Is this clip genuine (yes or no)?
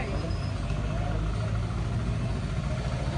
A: yes